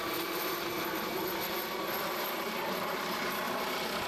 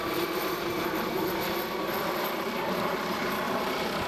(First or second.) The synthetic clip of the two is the second